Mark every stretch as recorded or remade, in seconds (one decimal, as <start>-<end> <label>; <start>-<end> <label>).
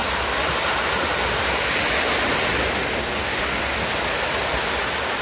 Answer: 0.0-3.0 recorded; 3.0-3.6 remade; 3.6-5.2 recorded